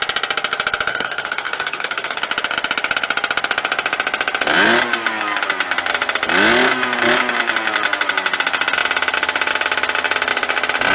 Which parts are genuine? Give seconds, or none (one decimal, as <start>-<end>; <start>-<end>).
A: 0.0-0.9; 2.2-10.9